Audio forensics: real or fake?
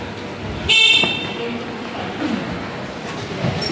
real